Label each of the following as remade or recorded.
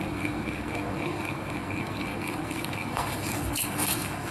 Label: remade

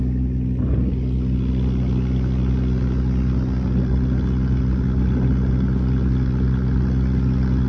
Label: recorded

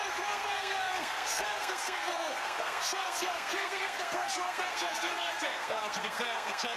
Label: remade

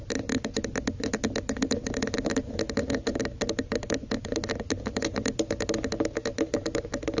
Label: recorded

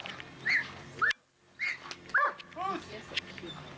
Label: recorded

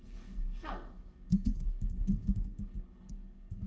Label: remade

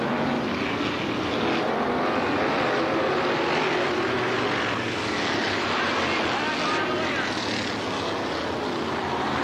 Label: recorded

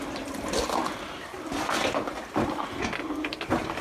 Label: recorded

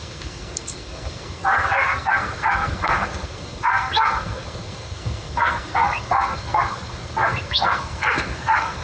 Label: remade